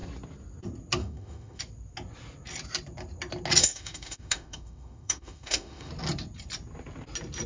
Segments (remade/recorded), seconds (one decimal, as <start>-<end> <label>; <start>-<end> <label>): 0.0-1.0 recorded; 1.0-1.6 remade; 1.6-3.6 recorded; 3.6-5.9 remade; 5.9-7.5 recorded